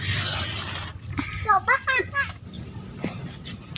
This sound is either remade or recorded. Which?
recorded